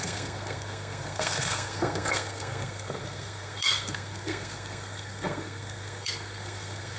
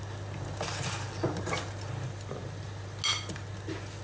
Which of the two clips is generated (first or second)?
first